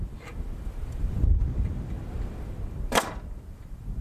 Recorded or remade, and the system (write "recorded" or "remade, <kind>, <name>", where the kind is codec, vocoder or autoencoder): remade, vocoder, BigVGAN v2